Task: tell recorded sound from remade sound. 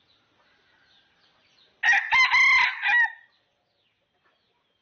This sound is recorded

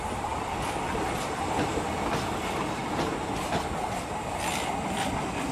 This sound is recorded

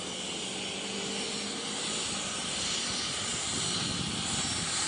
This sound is recorded